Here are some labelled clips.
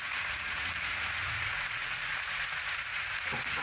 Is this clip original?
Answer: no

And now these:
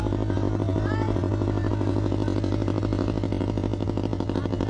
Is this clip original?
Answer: yes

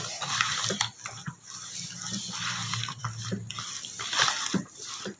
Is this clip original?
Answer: yes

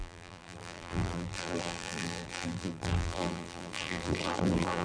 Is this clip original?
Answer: no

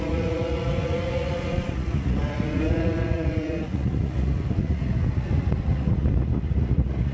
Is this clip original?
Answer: no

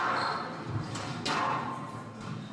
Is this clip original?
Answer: yes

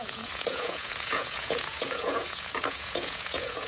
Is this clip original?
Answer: no